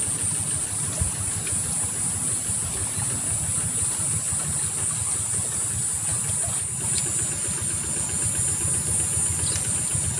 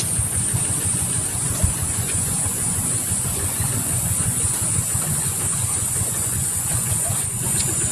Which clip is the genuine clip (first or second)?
first